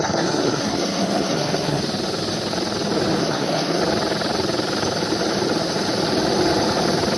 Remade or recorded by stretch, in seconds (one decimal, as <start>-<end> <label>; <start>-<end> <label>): 0.0-1.8 remade; 1.8-3.2 recorded; 3.2-3.8 remade; 3.8-7.2 recorded